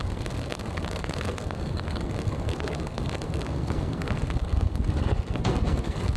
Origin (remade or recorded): remade